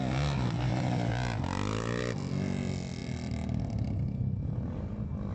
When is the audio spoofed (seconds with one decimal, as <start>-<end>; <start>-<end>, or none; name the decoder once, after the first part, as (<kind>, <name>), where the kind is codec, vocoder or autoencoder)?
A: none